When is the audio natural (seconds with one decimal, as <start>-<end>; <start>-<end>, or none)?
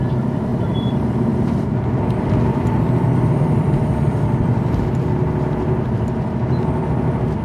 0.0-0.5; 4.9-7.4